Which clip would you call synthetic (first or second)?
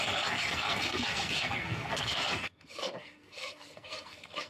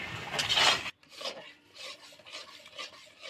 first